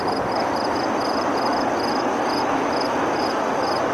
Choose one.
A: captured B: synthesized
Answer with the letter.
A